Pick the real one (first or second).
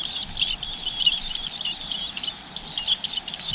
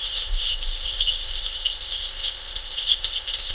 first